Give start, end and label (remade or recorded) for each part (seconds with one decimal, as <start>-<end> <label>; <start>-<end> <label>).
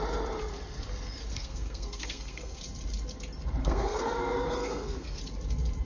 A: 0.0-1.3 recorded; 1.3-2.6 remade; 2.6-3.6 recorded; 3.6-5.2 remade; 5.2-5.8 recorded